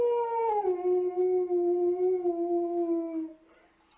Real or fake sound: real